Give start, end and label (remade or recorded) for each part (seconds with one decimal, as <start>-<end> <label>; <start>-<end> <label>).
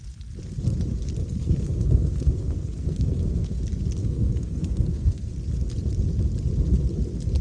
0.0-1.2 recorded; 1.2-3.6 remade; 3.6-4.0 recorded; 4.0-5.3 remade; 5.3-7.4 recorded